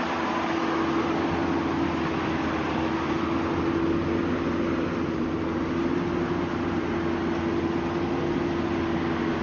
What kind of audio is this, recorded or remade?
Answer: recorded